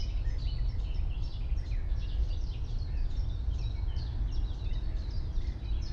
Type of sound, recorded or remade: recorded